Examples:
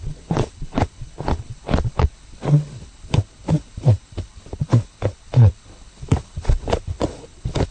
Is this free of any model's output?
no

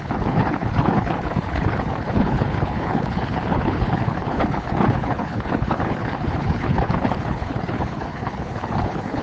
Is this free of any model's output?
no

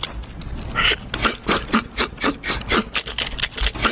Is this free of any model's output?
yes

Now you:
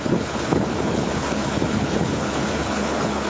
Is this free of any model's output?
no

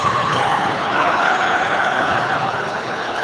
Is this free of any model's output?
no